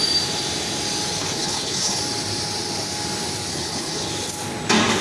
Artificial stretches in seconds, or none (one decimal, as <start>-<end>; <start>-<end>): 1.2-2.0; 3.5-4.1